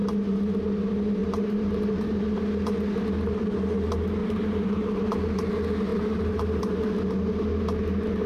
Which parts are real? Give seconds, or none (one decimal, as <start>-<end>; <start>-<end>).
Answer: 0.6-1.2; 2.4-4.2; 5.5-5.9; 6.6-8.3